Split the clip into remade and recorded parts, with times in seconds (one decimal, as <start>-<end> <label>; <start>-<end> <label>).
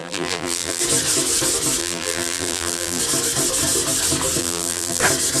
0.0-0.8 remade; 0.8-1.8 recorded; 1.8-3.0 remade; 3.0-4.4 recorded; 4.4-5.0 remade; 5.0-5.4 recorded